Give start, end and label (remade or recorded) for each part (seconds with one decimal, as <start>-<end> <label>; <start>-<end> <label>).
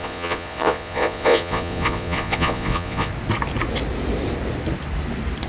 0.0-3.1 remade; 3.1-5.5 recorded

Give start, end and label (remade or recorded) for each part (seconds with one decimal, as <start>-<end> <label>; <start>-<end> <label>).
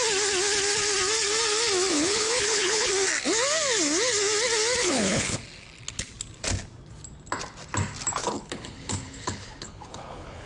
0.0-1.9 recorded; 1.9-2.9 remade; 2.9-4.8 recorded; 4.8-5.4 remade; 5.4-8.2 recorded; 8.2-10.5 remade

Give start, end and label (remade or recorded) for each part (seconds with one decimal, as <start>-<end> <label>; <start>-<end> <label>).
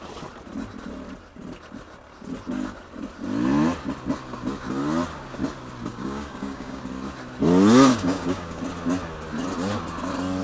0.0-5.9 recorded; 5.9-6.8 remade; 6.8-7.9 recorded; 7.9-8.6 remade; 8.6-10.4 recorded